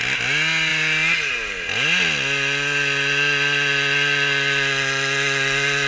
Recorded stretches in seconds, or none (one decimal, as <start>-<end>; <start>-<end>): 0.0-5.9